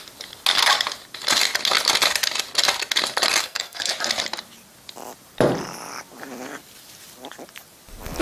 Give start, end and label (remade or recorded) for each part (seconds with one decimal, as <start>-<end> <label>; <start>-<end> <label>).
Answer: 0.0-3.4 recorded; 3.4-3.9 remade; 3.9-8.2 recorded